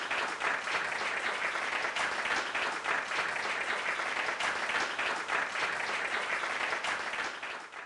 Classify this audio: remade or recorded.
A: recorded